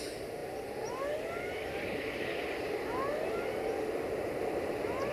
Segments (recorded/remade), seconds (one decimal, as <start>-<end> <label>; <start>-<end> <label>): 0.0-5.1 recorded